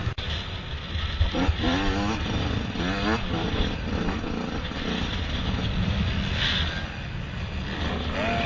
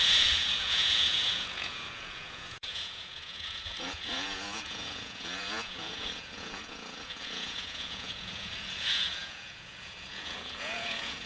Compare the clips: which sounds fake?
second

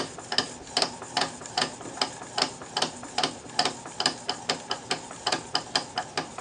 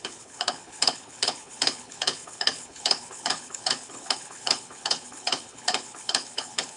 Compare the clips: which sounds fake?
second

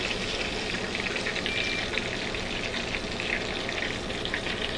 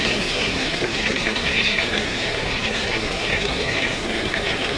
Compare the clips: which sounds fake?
second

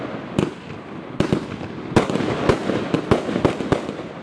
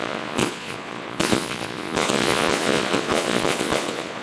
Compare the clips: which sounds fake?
second